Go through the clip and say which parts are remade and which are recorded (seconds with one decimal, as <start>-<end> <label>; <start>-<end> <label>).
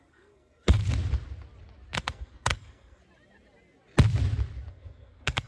0.0-0.8 remade; 0.8-2.0 recorded; 2.0-3.0 remade; 3.0-4.7 recorded; 4.7-5.5 remade